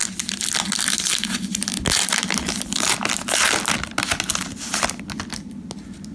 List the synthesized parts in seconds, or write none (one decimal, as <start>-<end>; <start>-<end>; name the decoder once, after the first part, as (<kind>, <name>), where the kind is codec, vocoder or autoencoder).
none